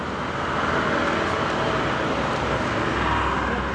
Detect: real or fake real